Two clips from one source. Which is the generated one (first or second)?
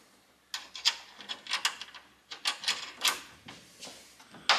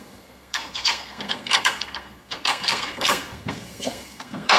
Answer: second